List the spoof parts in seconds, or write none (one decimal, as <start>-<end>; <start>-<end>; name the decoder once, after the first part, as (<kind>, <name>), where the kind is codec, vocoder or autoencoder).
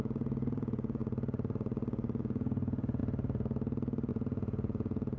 0.0-1.0 (vocoder, Vocos); 2.2-3.0; 4.1-5.2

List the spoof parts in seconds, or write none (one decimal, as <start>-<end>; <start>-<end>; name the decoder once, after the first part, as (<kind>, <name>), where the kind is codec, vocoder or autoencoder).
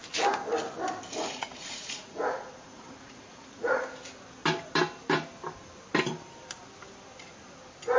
1.1-3.8 (vocoder, Vocos)